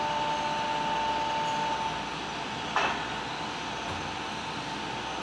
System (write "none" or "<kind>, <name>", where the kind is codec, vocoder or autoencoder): none